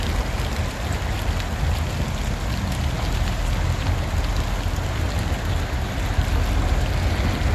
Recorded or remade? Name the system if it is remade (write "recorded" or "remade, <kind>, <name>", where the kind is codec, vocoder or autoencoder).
recorded